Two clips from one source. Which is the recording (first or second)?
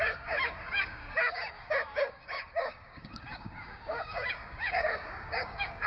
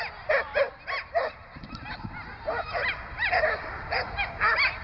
second